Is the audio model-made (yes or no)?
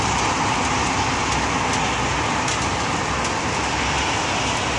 no